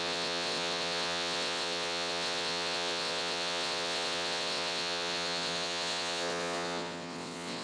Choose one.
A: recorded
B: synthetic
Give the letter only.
B